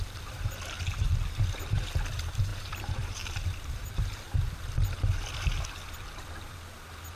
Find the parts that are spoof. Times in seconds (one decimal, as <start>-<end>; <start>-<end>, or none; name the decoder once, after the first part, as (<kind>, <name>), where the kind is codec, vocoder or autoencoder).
2.5-4.2 (vocoder, BigVGAN v2)